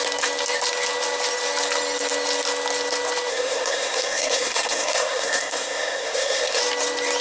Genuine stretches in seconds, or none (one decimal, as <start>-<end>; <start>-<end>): 0.0-3.3; 6.6-7.2